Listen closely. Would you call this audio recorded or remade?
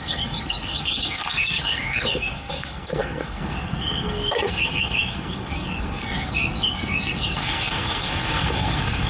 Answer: remade